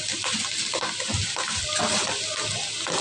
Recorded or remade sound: recorded